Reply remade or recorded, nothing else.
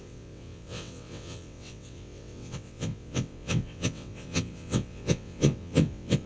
remade